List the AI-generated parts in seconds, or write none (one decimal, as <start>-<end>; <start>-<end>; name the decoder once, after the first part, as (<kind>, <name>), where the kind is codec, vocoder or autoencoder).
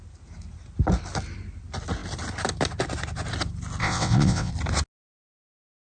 3.8-4.5 (vocoder, WaveNeXt)